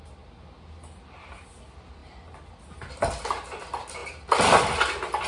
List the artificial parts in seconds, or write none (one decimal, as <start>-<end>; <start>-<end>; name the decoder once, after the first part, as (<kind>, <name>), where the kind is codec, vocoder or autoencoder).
none